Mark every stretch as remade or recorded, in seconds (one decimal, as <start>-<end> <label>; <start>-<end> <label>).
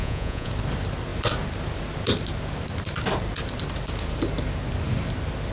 0.0-0.5 remade; 0.5-5.5 recorded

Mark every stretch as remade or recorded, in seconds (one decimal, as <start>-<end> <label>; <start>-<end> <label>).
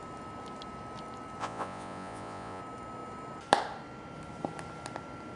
0.0-1.4 recorded; 1.4-2.6 remade; 2.6-5.4 recorded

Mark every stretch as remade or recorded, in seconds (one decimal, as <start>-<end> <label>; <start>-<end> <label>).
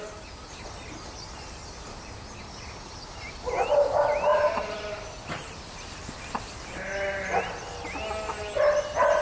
0.0-9.2 recorded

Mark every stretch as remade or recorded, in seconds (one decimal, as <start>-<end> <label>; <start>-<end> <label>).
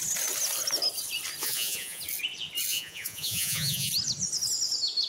0.0-1.4 recorded; 1.4-2.0 remade; 2.0-2.7 recorded; 2.7-3.9 remade; 3.9-5.1 recorded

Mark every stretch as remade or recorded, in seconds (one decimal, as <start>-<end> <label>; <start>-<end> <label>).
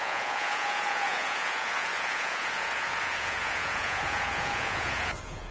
0.0-5.5 remade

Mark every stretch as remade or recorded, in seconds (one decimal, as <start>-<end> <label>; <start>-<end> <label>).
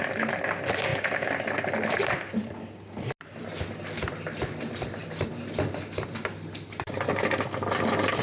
0.0-8.2 recorded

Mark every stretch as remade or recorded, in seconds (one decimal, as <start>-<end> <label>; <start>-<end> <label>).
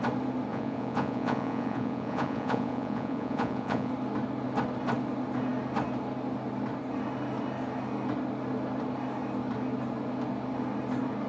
0.0-0.5 recorded; 0.5-3.9 remade; 3.9-11.3 recorded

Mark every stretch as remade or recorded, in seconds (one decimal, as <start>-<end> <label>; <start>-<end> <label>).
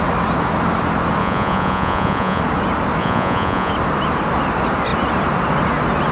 0.0-1.2 recorded; 1.2-2.4 remade; 2.4-3.0 recorded; 3.0-3.7 remade; 3.7-6.1 recorded